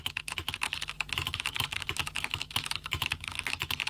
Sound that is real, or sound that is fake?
fake